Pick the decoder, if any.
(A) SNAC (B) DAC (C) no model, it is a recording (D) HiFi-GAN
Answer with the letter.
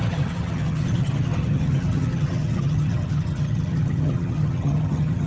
D